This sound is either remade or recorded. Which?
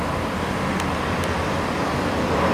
recorded